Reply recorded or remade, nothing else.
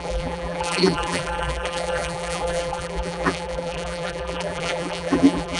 remade